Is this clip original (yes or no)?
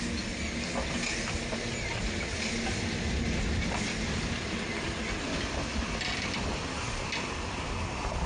yes